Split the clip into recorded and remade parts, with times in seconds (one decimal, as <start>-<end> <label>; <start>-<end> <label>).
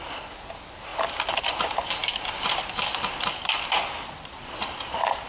0.0-5.3 recorded